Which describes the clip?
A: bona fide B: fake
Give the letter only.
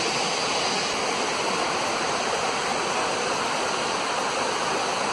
B